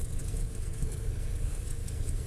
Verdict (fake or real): fake